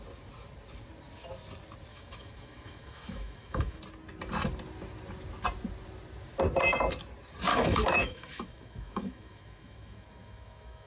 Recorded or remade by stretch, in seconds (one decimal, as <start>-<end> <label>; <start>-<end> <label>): 0.0-1.9 recorded; 1.9-3.8 remade; 3.8-7.5 recorded; 7.5-10.9 remade